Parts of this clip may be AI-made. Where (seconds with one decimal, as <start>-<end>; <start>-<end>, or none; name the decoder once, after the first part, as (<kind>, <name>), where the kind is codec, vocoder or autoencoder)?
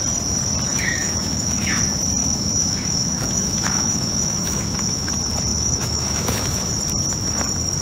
0.7-1.8 (autoencoder, DAC-VAE); 2.2-5.1; 5.5-6.7